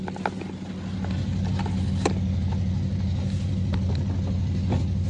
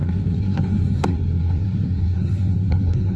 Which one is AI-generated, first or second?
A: second